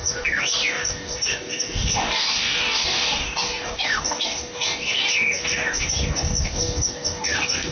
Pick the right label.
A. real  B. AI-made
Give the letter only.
B